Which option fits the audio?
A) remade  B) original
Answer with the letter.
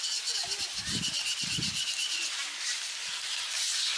B